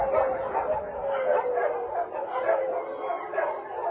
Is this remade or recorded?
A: recorded